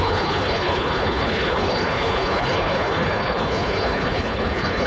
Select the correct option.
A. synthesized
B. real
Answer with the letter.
A